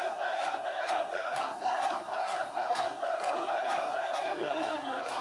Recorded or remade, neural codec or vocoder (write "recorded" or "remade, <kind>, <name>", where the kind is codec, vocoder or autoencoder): remade, codec, SNAC